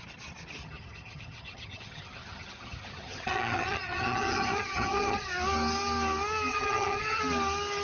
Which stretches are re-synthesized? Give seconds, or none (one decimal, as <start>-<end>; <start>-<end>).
0.6-5.3; 6.5-7.2